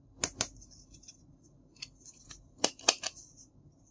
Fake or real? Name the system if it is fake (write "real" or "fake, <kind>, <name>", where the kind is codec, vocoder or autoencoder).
real